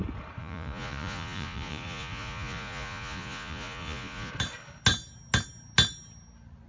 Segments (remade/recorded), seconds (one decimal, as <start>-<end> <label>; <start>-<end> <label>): 0.0-0.4 recorded; 0.4-4.3 remade; 4.3-6.7 recorded